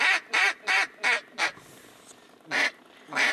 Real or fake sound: real